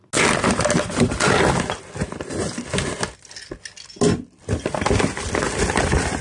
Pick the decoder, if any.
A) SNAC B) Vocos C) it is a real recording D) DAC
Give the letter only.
C